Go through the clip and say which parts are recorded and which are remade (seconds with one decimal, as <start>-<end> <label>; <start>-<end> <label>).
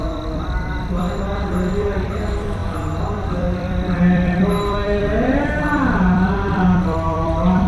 0.0-7.7 remade